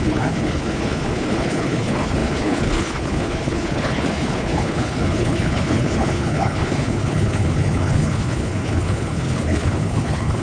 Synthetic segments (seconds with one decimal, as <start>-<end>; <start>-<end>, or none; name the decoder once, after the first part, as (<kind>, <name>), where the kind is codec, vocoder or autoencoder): 0.0-10.4 (codec, HILCodec)